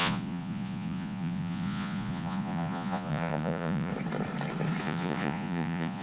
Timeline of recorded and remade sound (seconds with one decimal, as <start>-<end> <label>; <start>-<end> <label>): 0.0-3.9 remade; 3.9-4.8 recorded; 4.8-6.0 remade